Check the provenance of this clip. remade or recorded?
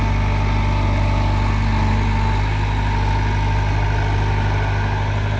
recorded